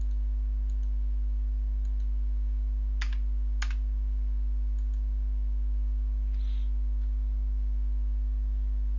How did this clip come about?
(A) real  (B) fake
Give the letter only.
A